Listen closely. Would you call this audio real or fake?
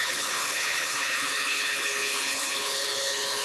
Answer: fake